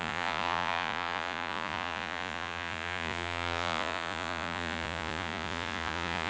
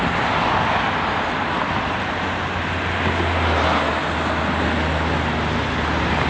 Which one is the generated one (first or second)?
first